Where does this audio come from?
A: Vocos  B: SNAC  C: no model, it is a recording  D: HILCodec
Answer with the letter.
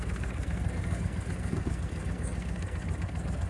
B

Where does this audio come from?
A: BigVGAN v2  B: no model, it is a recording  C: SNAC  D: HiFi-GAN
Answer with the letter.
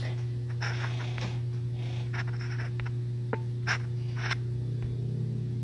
B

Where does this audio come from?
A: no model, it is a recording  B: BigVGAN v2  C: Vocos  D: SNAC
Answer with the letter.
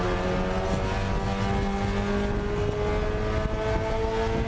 A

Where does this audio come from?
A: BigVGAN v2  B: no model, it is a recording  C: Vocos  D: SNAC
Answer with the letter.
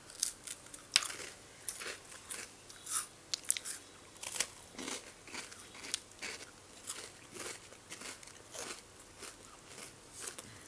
B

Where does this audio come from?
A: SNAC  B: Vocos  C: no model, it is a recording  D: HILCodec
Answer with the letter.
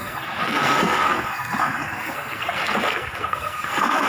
A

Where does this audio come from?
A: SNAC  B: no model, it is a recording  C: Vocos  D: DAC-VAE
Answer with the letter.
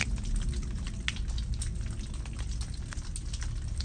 B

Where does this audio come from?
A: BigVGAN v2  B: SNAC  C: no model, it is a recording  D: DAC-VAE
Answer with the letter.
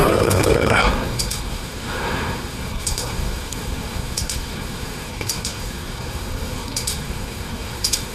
B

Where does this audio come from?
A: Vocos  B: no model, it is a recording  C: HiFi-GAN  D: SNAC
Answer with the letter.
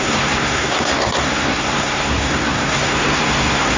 D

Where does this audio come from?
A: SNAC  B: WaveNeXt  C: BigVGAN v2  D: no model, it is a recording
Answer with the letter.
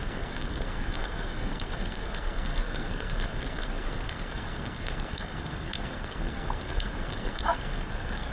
A